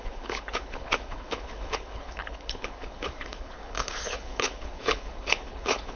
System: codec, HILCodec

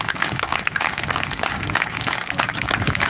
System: codec, DAC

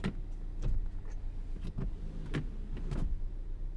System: none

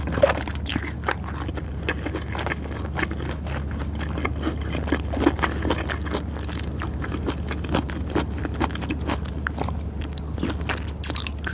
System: none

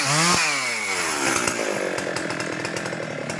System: none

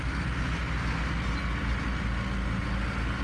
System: none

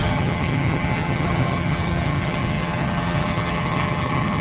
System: vocoder, HiFi-GAN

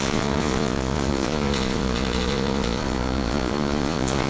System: vocoder, Vocos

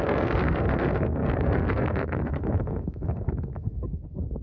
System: codec, SNAC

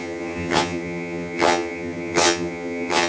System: vocoder, HiFi-GAN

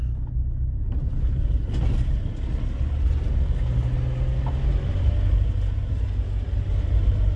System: none